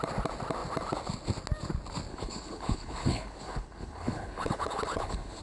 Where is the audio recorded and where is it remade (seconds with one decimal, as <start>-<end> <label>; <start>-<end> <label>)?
0.0-2.1 recorded; 2.1-5.4 remade